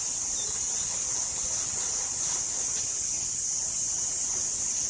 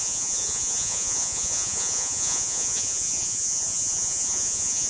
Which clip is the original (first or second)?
first